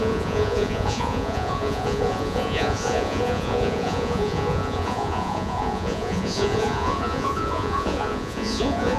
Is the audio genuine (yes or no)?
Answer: no